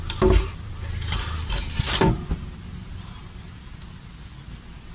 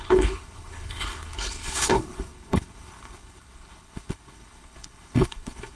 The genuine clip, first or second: first